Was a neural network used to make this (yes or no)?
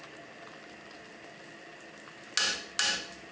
no